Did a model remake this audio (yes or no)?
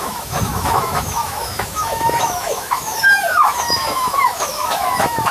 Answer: yes